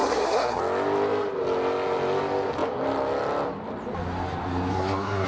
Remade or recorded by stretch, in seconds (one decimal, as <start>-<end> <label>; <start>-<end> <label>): 0.0-0.6 remade; 0.6-4.7 recorded; 4.7-5.3 remade